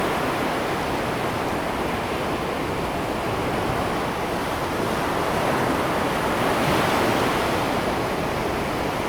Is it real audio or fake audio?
real